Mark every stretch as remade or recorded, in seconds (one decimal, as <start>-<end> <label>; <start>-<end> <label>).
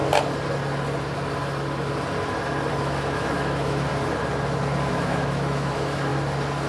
0.0-2.7 recorded; 2.7-3.9 remade; 3.9-4.9 recorded; 4.9-6.1 remade; 6.1-6.7 recorded